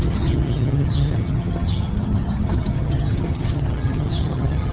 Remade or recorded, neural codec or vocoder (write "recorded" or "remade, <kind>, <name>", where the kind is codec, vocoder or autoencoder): remade, vocoder, HiFi-GAN